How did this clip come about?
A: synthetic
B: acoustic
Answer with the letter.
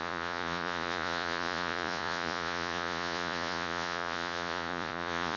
A